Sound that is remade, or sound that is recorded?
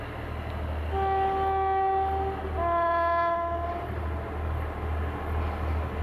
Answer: recorded